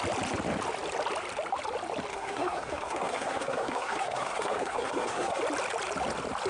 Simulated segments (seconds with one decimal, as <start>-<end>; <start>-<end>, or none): 2.1-5.4

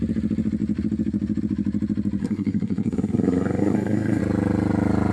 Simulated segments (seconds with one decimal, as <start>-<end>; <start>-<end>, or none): 2.2-4.2

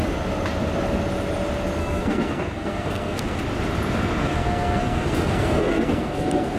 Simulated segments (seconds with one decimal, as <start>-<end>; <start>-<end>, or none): 1.8-3.4; 4.2-6.6

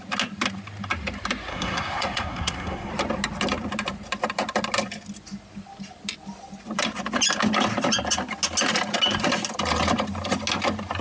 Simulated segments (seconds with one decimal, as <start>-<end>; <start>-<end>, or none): 1.5-2.9

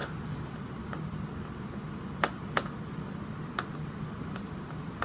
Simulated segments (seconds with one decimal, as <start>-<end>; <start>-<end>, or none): none